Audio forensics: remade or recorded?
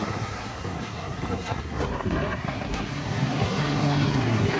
remade